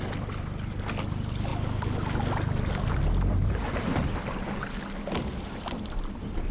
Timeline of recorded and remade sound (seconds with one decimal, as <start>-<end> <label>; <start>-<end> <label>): 0.0-6.5 recorded